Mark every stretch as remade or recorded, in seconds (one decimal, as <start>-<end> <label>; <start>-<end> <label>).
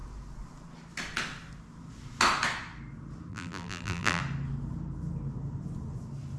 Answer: 0.0-3.3 recorded; 3.3-4.2 remade; 4.2-6.4 recorded